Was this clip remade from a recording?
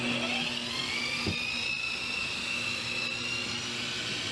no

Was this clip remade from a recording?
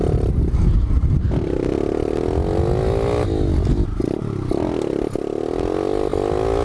no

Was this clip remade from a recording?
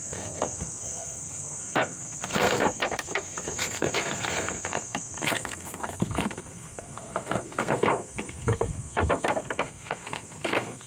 yes